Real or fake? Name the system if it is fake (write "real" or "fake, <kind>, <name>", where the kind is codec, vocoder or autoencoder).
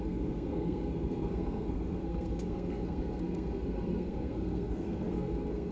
fake, codec, SNAC